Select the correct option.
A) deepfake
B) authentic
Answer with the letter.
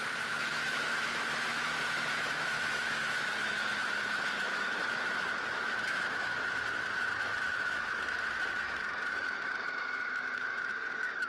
A